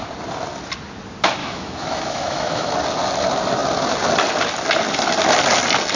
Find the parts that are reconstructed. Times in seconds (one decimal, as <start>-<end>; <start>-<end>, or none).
1.4-2.7